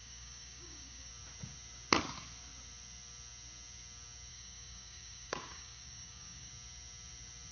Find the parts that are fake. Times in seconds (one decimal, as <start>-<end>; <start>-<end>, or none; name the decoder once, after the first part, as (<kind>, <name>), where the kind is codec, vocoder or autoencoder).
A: 0.0-1.1 (codec, DAC); 4.3-6.5